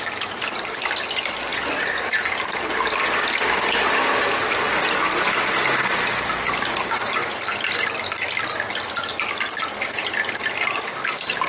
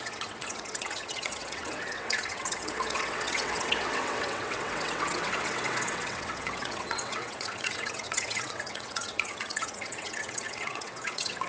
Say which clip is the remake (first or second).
second